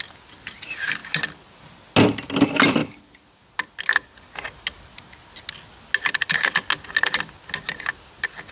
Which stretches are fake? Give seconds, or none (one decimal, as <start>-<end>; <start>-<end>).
none